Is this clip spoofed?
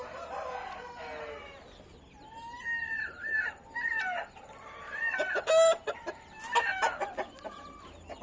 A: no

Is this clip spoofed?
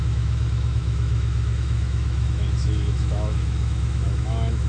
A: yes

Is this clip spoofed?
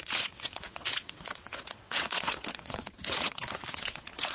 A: yes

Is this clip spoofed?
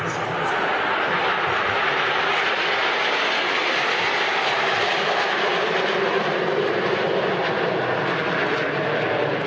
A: no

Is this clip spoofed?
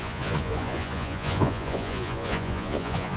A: yes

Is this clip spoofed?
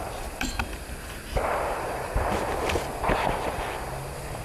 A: yes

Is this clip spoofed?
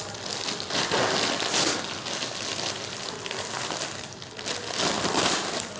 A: no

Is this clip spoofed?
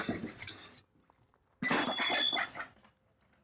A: no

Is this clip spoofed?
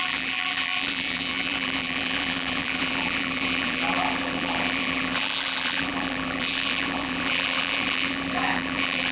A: yes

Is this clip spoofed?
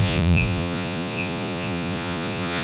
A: yes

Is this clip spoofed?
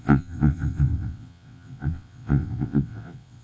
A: yes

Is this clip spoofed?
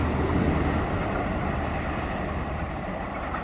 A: no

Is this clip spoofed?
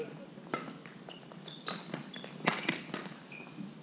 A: no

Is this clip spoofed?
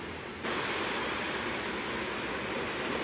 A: no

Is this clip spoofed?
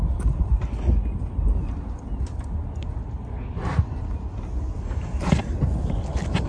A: no